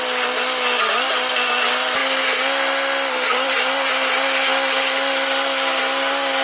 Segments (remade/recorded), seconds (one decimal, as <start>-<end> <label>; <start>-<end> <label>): 0.0-6.4 recorded